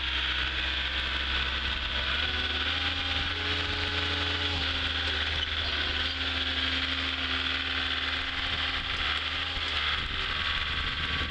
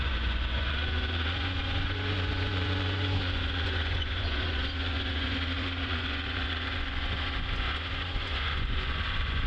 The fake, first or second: second